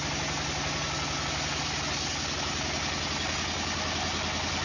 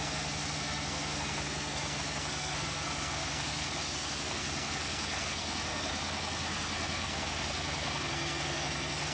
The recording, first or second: first